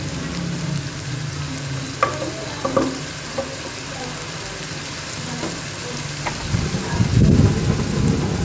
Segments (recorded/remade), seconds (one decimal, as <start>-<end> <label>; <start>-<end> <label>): 0.0-8.4 recorded